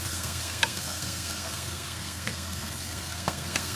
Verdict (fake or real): fake